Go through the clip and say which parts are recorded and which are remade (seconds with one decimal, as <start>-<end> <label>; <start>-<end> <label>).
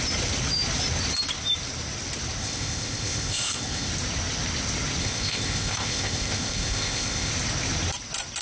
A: 0.0-2.4 recorded; 2.4-3.9 remade; 3.9-5.0 recorded; 5.0-7.3 remade; 7.3-8.4 recorded